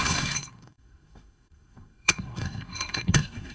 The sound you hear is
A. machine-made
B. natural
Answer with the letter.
A